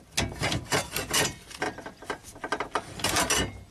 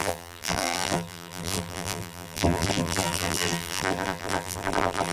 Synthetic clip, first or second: second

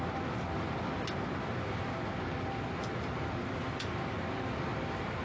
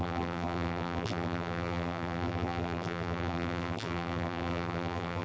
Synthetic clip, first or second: second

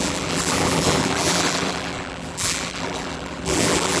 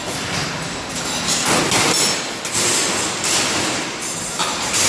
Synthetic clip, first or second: first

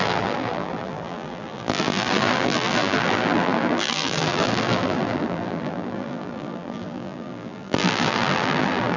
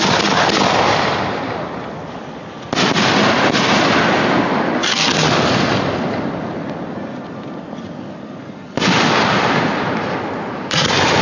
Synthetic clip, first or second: first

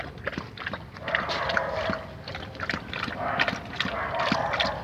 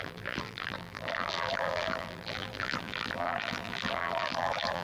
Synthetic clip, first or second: second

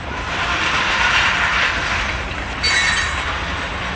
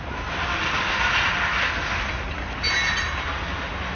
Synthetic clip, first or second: first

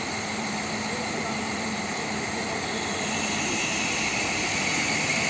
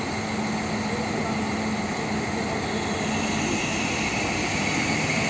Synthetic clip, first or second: first